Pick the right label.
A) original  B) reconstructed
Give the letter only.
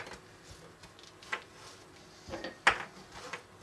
A